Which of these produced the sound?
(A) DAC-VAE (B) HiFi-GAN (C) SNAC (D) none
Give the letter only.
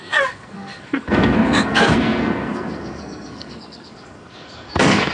C